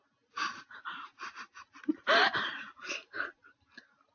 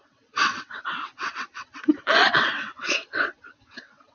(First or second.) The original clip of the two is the first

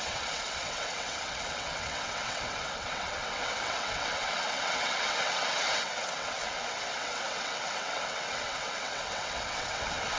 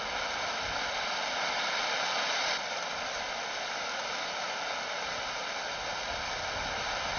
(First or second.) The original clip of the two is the second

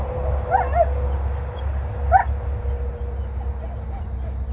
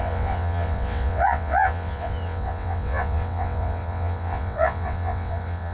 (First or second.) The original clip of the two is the first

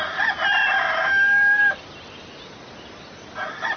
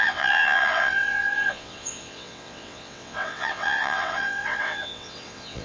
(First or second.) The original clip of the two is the first